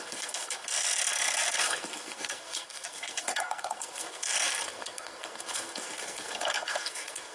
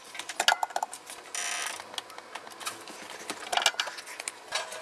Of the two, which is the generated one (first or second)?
first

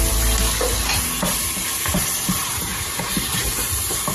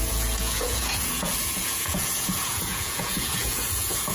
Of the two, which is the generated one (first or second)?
second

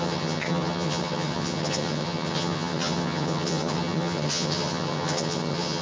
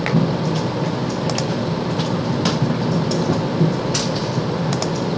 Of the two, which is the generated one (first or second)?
first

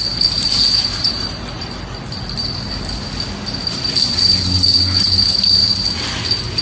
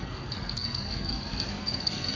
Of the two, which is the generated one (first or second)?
second